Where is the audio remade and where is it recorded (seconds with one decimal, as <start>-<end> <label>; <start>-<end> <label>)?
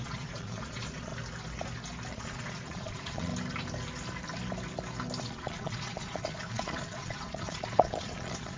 0.0-1.1 remade; 1.1-2.1 recorded; 2.1-3.3 remade; 3.3-5.2 recorded; 5.2-8.6 remade